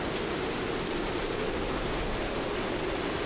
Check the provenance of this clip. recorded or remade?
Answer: recorded